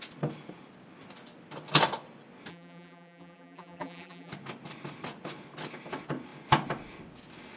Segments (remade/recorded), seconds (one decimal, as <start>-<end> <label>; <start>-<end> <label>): 0.0-2.5 recorded; 2.5-4.3 remade; 4.3-7.6 recorded